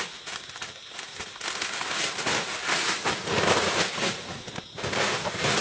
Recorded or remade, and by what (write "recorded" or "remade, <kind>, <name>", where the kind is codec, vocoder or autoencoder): recorded